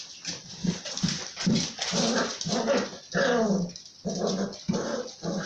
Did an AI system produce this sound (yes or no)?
no